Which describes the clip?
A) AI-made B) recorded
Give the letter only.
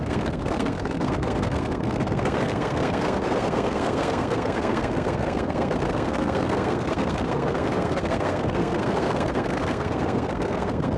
A